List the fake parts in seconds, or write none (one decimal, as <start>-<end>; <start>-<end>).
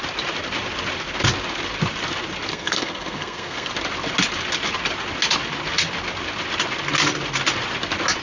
2.5-3.7